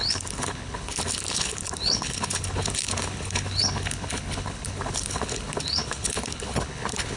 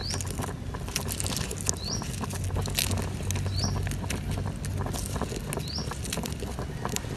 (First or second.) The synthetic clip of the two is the first